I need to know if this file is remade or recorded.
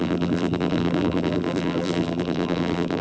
remade